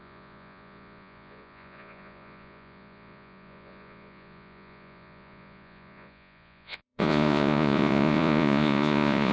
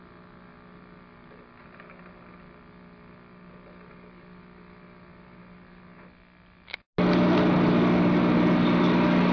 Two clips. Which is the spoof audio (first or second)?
first